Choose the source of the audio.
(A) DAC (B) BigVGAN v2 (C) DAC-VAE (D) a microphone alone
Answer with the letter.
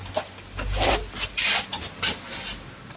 D